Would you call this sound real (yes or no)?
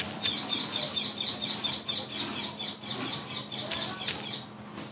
yes